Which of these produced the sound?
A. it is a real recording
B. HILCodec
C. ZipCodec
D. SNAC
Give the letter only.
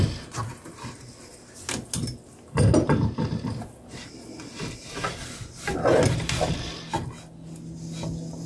A